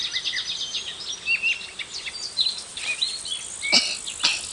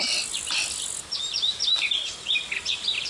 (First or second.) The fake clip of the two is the second